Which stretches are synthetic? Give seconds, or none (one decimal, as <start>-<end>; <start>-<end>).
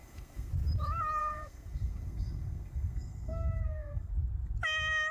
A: 0.0-0.5; 1.2-4.1